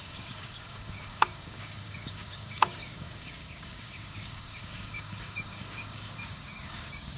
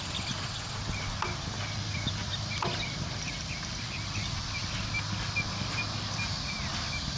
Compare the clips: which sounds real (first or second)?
second